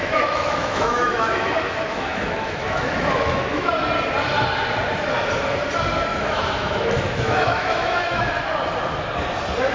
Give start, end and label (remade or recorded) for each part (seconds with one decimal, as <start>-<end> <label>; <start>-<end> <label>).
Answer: 0.0-3.7 remade; 3.7-6.1 recorded; 6.1-8.3 remade; 8.3-9.7 recorded